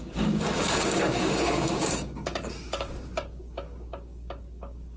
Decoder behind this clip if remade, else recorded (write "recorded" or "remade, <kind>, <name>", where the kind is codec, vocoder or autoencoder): remade, codec, DAC